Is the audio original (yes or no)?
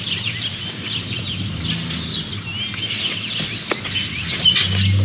yes